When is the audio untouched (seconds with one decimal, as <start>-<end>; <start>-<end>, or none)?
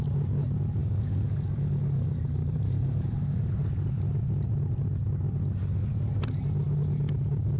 0.0-0.8; 3.4-7.6